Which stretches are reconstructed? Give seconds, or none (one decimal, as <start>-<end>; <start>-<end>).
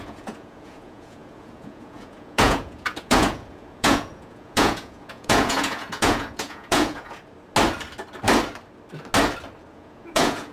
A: 0.0-7.2; 9.7-10.5